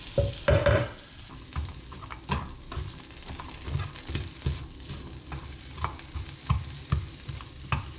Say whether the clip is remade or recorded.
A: recorded